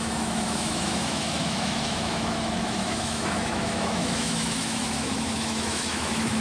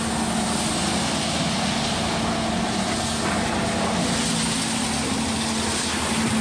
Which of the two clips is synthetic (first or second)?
first